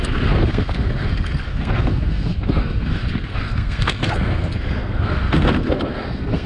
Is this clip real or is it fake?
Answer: fake